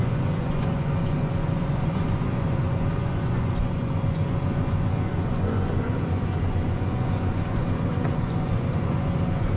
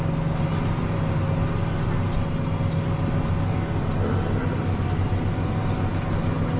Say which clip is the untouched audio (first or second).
second